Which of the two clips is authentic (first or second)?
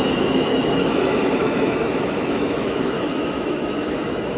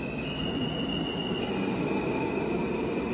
second